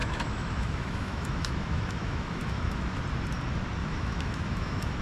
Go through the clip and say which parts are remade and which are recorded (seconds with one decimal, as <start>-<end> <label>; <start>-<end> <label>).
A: 0.0-3.0 remade; 3.0-3.8 recorded; 3.8-5.0 remade